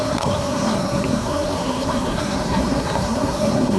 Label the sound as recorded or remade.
remade